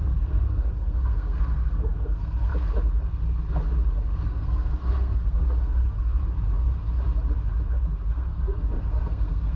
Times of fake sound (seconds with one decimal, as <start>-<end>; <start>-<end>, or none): 0.0-2.5; 4.2-6.2; 8.1-9.6